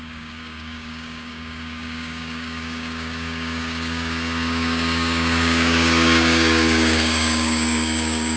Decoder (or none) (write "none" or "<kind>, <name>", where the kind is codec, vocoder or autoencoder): codec, DAC